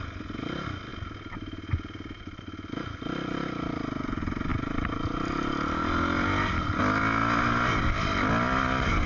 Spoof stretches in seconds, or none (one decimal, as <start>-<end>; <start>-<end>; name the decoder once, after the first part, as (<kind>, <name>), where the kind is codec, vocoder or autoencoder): none